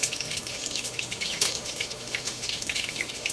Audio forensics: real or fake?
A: fake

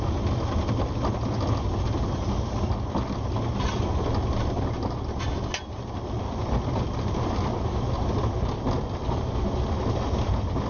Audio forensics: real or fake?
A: real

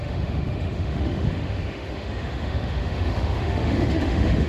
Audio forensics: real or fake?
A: fake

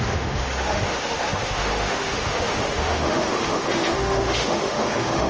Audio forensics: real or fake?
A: fake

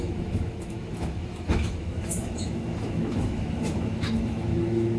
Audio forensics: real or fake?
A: fake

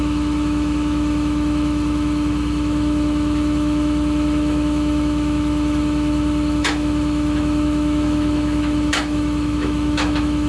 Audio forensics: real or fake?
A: fake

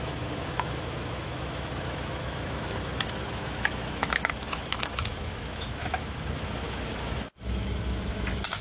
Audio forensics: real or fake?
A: fake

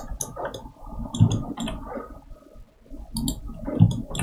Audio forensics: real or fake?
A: real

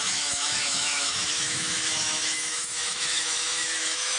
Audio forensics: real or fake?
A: fake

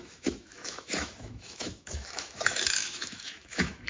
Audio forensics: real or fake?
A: fake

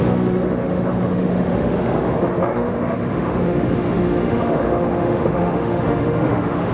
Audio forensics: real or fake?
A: fake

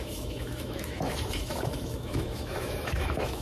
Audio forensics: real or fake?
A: fake